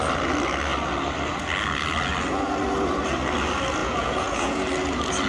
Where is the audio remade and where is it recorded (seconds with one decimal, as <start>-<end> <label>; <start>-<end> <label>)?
0.0-3.8 recorded; 3.8-4.6 remade; 4.6-5.3 recorded